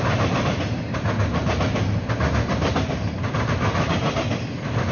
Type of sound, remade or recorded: recorded